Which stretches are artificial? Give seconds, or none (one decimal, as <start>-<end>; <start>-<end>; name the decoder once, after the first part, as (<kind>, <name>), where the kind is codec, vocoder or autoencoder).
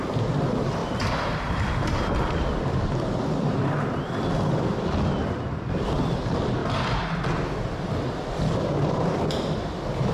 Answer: 0.0-6.6 (vocoder, BigVGAN v2)